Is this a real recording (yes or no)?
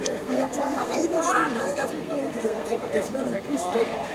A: no